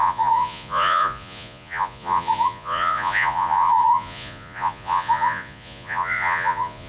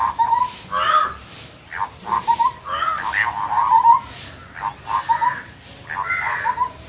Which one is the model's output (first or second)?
first